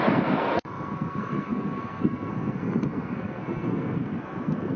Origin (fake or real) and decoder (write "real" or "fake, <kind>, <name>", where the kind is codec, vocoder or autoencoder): fake, codec, SNAC